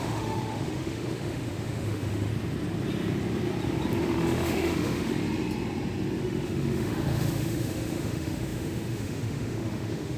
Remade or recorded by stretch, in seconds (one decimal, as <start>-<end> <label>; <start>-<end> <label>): 0.0-2.3 remade; 2.3-4.0 recorded; 4.0-5.2 remade; 5.2-6.2 recorded; 6.2-10.2 remade